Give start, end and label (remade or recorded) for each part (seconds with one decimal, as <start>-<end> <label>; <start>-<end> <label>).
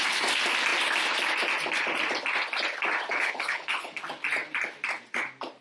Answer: 0.0-3.1 recorded; 3.1-4.0 remade; 4.0-5.6 recorded